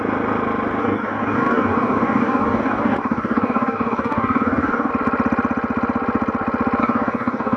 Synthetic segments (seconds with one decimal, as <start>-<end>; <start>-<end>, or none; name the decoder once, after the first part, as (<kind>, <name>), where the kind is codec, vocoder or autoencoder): 0.8-4.9 (codec, DAC); 6.8-7.6

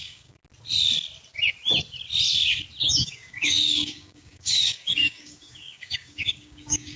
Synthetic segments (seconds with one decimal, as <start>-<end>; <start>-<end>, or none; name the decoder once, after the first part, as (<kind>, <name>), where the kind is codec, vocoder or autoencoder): 0.0-0.4 (codec, DAC); 2.9-7.0

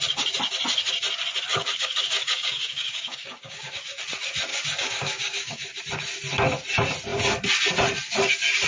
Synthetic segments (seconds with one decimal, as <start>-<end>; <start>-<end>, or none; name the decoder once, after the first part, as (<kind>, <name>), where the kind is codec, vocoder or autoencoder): 1.5-3.8 (codec, DAC); 4.5-5.8

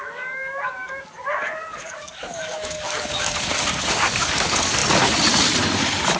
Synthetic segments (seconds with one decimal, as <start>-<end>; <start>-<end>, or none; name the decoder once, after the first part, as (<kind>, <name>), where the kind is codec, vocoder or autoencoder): 0.0-4.8 (codec, DAC)

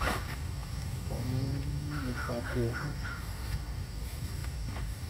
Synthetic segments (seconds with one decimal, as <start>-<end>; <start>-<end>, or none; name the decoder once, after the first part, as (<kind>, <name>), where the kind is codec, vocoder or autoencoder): 0.0-5.1 (codec, DAC)

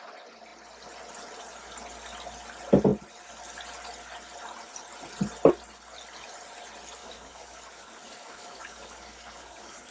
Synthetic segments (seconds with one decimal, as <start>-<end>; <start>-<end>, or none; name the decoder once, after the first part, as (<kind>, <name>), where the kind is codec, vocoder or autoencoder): 7.0-9.9 (codec, DAC)